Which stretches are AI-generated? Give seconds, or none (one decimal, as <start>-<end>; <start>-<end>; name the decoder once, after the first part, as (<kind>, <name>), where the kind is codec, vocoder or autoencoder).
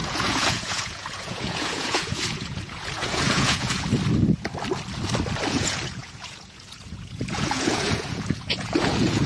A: 0.0-3.9 (vocoder, Vocos); 5.5-9.3